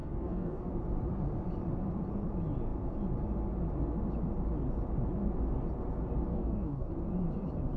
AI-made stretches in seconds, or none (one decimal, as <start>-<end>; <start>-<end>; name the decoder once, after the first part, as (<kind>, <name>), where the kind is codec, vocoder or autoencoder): 0.0-0.7 (codec, DAC); 6.3-6.9